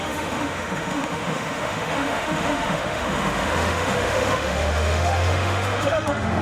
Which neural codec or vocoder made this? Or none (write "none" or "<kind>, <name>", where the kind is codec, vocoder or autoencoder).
autoencoder, DAC-VAE